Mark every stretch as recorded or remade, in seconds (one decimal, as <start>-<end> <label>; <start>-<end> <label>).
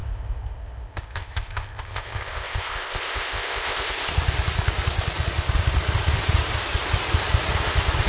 0.0-4.1 remade; 4.1-8.1 recorded